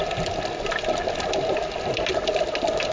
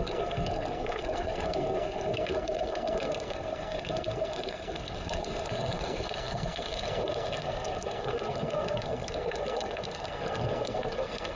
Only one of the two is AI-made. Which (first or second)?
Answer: second